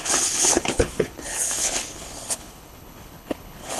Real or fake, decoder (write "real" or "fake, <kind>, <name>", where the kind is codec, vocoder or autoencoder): fake, codec, HILCodec